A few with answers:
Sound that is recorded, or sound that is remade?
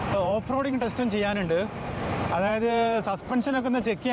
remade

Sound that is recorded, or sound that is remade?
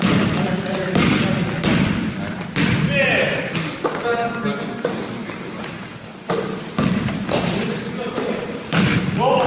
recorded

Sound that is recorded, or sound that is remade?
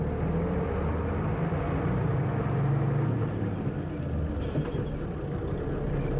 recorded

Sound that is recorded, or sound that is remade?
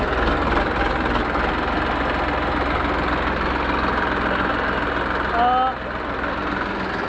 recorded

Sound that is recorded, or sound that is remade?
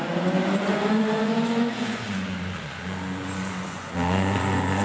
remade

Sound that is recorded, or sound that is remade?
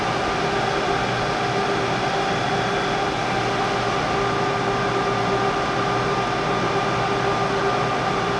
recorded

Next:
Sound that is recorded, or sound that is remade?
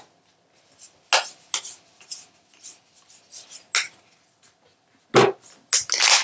recorded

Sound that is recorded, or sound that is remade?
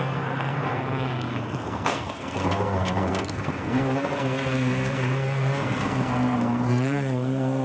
remade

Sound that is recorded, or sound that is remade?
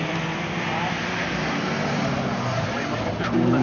remade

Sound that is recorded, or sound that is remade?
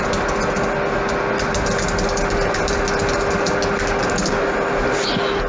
recorded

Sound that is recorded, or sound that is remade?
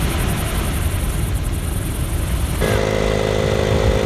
recorded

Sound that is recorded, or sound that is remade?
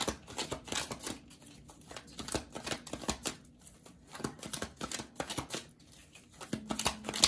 recorded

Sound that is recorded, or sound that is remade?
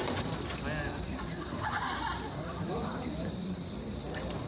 remade